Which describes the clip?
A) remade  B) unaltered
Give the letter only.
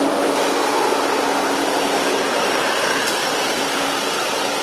B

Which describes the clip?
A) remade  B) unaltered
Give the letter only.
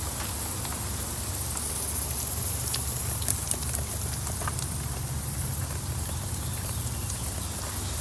B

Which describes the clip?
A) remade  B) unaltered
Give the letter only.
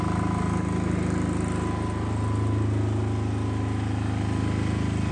B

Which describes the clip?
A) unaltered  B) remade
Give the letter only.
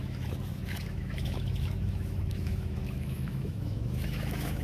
B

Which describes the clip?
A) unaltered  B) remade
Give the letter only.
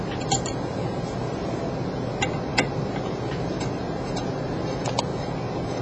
A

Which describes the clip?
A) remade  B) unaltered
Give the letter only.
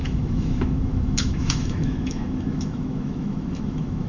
A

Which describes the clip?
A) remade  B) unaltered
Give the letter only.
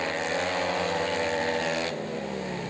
B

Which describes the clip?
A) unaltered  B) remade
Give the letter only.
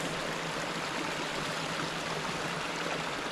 A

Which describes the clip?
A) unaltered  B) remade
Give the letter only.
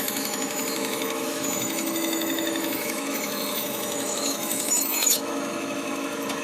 B